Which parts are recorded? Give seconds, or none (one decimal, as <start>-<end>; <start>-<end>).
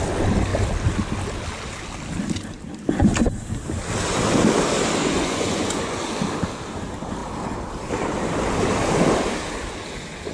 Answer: 0.0-5.0; 6.0-10.3